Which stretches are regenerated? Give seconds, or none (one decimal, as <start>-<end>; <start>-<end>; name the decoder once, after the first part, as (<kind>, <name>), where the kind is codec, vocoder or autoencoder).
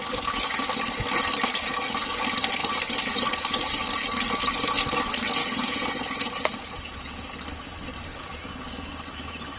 5.4-7.2 (vocoder, Vocos); 8.1-8.9